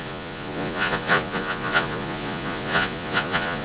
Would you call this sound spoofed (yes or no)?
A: yes